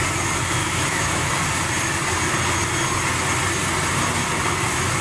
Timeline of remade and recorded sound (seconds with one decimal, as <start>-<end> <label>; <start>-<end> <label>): 0.0-0.6 recorded; 0.6-1.3 remade; 1.3-5.0 recorded